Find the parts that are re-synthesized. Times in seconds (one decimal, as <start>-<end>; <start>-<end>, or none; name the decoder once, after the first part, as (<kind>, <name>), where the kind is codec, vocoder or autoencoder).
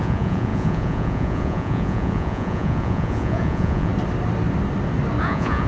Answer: 0.0-3.9 (vocoder, Vocos); 5.2-5.7